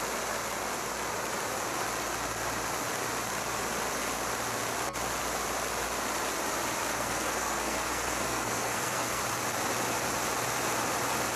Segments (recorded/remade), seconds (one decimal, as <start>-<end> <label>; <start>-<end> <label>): 0.0-6.9 recorded; 6.9-9.2 remade; 9.2-11.4 recorded